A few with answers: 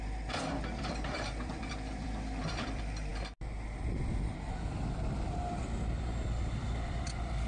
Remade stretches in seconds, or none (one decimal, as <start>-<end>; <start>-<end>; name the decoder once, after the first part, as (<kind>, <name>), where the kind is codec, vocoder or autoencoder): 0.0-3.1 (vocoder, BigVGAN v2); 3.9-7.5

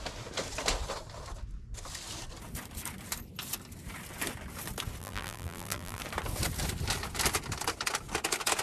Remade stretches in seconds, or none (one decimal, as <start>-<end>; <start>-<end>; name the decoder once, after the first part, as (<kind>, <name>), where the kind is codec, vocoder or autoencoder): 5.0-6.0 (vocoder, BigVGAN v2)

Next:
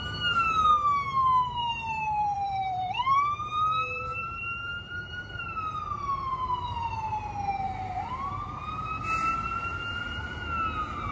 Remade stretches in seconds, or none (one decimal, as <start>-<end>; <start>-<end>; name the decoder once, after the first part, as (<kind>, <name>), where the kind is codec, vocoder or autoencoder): 1.6-5.4 (vocoder, BigVGAN v2)

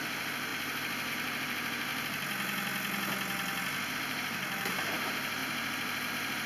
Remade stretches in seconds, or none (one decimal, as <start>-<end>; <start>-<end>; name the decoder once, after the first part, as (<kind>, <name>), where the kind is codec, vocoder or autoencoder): 0.0-1.9 (vocoder, BigVGAN v2); 3.9-6.5